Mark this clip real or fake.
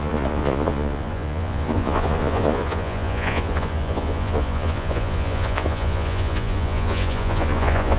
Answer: fake